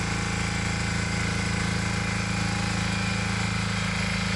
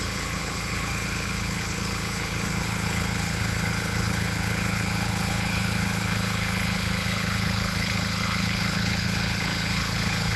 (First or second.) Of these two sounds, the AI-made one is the second